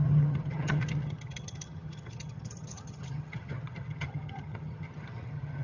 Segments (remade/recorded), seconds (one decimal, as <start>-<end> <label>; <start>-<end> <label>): 0.0-5.6 remade